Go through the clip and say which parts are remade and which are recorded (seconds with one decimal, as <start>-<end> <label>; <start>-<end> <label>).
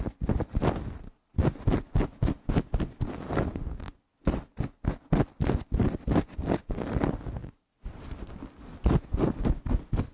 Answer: 0.0-10.1 recorded